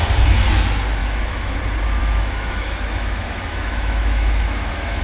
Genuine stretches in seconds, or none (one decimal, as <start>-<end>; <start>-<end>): 0.0-1.0; 1.6-2.0